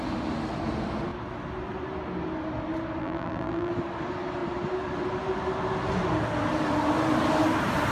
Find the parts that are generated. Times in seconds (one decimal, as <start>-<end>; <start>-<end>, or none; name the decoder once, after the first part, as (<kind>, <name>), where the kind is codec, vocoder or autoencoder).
3.0-3.7 (vocoder, BigVGAN v2)